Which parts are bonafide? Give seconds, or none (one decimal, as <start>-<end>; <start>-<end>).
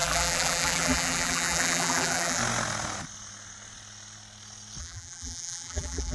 2.4-4.8